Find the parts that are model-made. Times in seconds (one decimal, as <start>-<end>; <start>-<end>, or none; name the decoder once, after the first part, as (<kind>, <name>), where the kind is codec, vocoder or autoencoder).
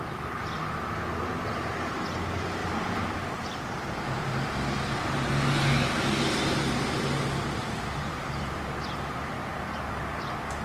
2.6-5.1 (vocoder, BigVGAN v2); 7.6-8.6; 9.4-10.0